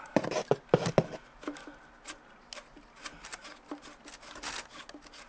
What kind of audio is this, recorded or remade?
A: recorded